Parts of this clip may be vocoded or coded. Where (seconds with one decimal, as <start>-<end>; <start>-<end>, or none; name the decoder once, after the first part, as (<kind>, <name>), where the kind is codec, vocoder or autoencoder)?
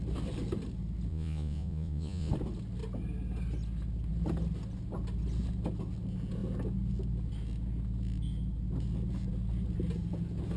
1.1-2.3 (vocoder, Vocos)